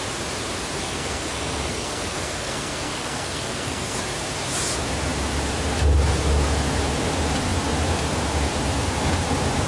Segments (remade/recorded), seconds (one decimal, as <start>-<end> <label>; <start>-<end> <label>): 0.0-0.8 recorded; 0.8-4.0 remade; 4.0-9.7 recorded